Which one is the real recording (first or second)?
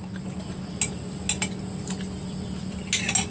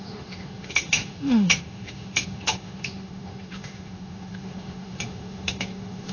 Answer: first